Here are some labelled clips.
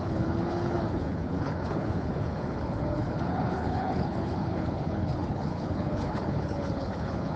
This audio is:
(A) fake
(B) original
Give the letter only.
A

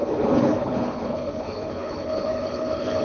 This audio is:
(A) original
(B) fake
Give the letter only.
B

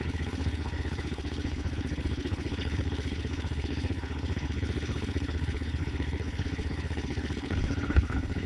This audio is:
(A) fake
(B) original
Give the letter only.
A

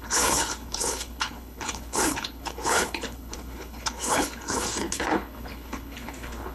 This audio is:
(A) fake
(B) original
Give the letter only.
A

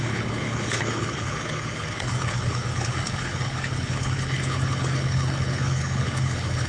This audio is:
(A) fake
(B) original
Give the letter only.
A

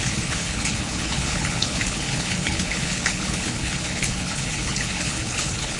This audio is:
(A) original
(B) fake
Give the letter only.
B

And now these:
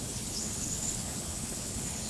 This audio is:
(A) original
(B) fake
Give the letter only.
B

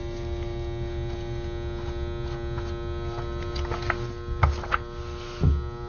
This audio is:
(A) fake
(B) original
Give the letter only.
B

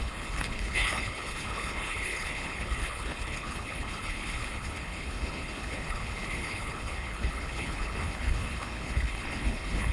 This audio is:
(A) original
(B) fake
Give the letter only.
B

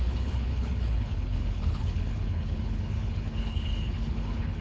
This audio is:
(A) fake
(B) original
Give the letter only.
A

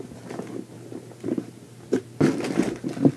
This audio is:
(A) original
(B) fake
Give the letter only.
A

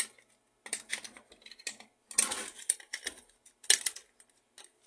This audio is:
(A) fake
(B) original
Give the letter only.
B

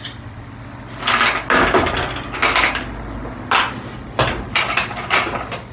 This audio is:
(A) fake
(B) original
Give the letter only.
B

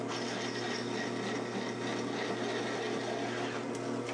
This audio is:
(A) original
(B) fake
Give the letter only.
A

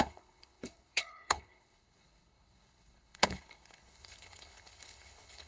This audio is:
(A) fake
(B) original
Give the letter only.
A